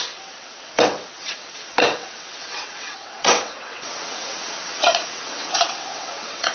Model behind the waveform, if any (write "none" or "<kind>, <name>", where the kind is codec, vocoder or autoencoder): vocoder, WaveNeXt